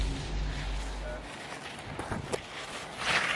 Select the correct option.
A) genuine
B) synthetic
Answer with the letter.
A